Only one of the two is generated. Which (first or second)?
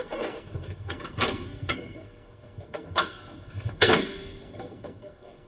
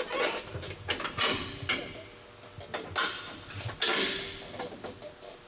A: first